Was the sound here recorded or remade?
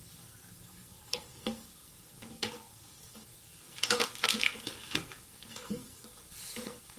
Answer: remade